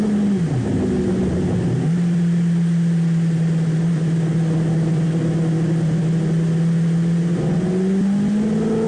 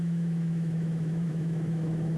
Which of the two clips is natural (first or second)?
first